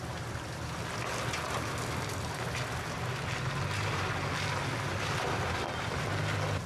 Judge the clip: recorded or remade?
recorded